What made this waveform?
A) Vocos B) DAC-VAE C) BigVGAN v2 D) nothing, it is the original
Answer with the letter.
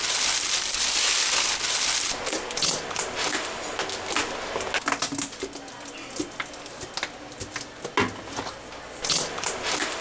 D